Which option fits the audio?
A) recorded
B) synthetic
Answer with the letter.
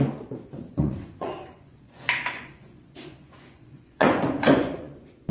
B